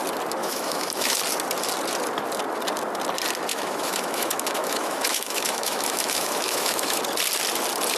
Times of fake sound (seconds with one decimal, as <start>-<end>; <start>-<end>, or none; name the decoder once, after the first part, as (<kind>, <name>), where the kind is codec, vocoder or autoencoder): 0.4-1.2 (autoencoder, DAC-VAE); 3.5-7.0